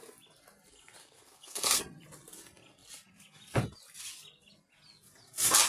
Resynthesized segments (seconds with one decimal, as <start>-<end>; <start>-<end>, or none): 1.0-1.8

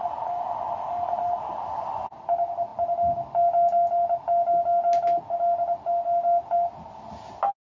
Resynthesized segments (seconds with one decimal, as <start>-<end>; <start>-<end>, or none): none

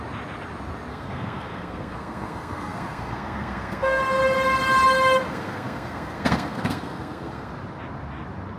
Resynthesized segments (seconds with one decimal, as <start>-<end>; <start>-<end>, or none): 0.9-4.0; 5.3-7.5

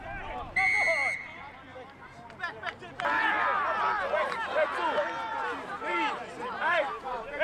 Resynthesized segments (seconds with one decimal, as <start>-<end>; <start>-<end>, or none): none

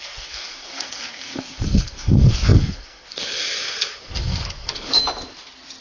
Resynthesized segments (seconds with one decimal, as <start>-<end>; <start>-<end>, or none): 0.0-5.0

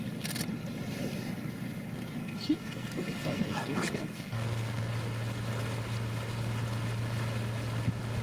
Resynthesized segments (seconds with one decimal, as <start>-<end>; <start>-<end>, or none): 2.2-4.9

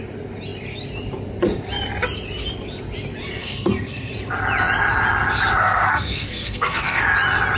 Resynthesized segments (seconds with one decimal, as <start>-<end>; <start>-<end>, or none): 3.4-4.1; 5.6-7.0